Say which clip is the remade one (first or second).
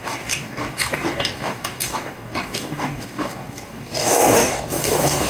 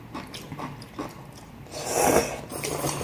first